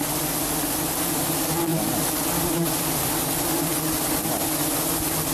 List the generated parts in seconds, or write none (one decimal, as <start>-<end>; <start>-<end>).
none